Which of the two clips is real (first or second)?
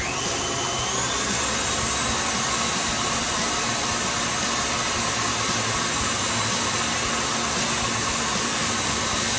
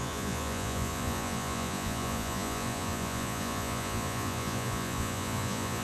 first